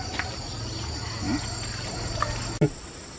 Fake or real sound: real